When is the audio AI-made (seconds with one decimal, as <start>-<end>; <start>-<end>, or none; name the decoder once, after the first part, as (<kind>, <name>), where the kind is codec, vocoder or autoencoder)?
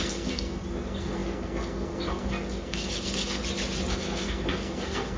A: 0.0-3.4 (codec, SNAC); 3.9-5.2